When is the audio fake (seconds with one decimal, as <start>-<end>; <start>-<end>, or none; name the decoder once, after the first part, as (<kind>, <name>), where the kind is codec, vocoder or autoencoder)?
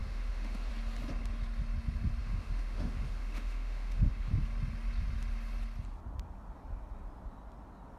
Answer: 0.0-0.7 (autoencoder, DAC-VAE); 2.2-4.3